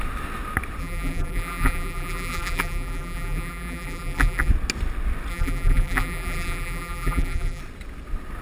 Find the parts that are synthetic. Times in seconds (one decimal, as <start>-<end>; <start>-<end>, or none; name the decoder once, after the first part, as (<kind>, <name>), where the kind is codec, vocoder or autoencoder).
0.8-4.5 (vocoder, BigVGAN v2); 5.3-7.6

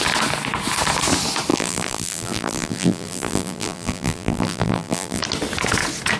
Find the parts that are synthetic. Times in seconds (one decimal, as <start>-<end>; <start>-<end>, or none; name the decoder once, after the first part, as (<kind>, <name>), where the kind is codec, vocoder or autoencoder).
1.5-5.2 (vocoder, BigVGAN v2)

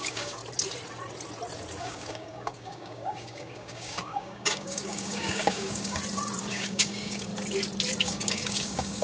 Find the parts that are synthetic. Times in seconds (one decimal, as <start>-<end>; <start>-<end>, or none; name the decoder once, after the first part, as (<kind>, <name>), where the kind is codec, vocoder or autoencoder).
0.0-0.4 (codec, DAC); 1.8-6.0; 6.5-7.3; 8.0-9.0